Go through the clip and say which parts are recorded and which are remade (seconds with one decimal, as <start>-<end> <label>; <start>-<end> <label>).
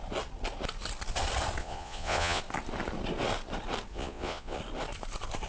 0.0-1.6 recorded; 1.6-2.4 remade; 2.4-3.9 recorded; 3.9-4.6 remade; 4.6-5.5 recorded